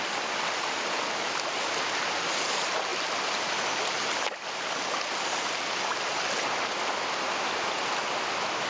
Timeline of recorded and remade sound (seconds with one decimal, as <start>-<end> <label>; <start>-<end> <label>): 0.0-8.7 recorded

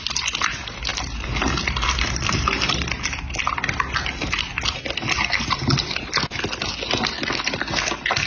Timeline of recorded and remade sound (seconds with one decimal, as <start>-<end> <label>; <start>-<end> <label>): 0.0-8.3 recorded

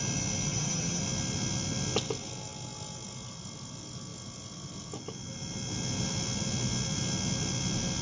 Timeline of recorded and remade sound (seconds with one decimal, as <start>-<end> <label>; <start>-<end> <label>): 0.0-0.5 recorded; 0.5-1.0 remade; 1.0-8.0 recorded

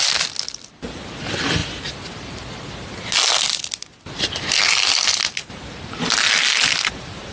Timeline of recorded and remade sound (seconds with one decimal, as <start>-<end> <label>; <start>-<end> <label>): 0.0-7.3 recorded